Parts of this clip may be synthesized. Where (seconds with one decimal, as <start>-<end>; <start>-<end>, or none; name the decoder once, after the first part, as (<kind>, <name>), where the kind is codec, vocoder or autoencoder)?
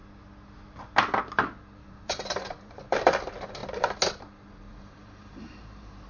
1.8-2.8 (vocoder, BigVGAN v2); 4.7-6.1